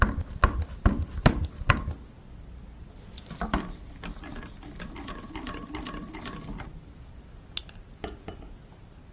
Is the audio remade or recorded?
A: remade